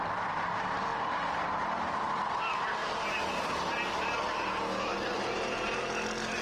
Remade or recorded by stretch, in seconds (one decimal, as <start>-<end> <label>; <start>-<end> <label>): 0.0-6.4 recorded